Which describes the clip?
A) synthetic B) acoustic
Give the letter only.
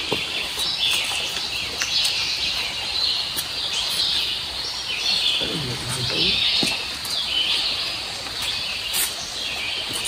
B